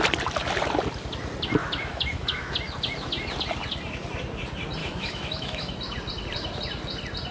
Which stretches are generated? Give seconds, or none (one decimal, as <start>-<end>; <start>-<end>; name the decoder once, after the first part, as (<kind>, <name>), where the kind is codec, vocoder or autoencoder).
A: 1.6-2.5 (autoencoder, DAC-VAE); 4.8-5.7